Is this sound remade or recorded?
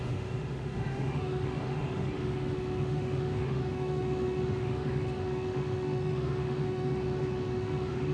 remade